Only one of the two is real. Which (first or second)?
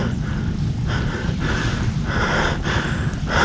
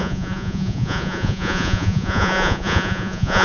first